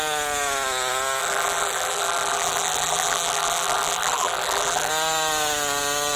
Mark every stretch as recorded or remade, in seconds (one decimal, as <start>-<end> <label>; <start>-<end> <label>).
0.0-1.2 recorded; 1.2-4.9 remade; 4.9-6.2 recorded

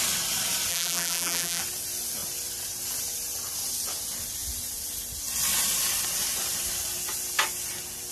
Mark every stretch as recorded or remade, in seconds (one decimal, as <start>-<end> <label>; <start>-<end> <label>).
0.0-0.7 recorded; 0.7-1.6 remade; 1.6-8.1 recorded

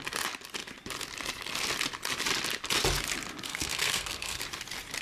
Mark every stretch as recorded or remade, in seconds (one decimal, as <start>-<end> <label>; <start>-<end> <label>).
0.0-3.5 recorded; 3.5-4.4 remade; 4.4-5.0 recorded

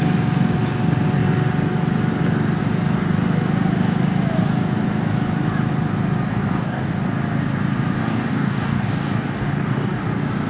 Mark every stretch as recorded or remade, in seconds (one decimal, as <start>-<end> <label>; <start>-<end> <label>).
0.0-6.3 recorded; 6.3-6.9 remade; 6.9-8.0 recorded; 8.0-10.0 remade; 10.0-10.5 recorded

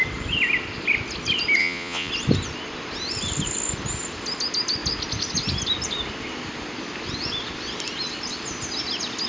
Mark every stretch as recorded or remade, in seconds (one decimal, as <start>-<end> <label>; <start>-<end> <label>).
0.0-1.6 recorded; 1.6-2.1 remade; 2.1-9.3 recorded

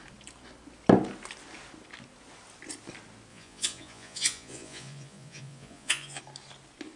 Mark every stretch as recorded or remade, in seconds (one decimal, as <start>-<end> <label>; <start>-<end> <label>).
0.0-3.3 recorded; 3.3-6.2 remade; 6.2-7.0 recorded

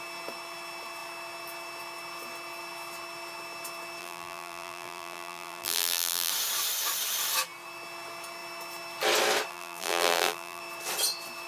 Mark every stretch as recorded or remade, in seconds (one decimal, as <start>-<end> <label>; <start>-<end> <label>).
0.0-4.0 recorded; 4.0-6.3 remade; 6.3-9.5 recorded; 9.5-10.6 remade; 10.6-11.5 recorded

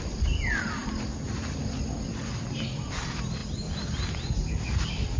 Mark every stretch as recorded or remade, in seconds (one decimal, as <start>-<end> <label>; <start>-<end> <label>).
0.0-5.2 recorded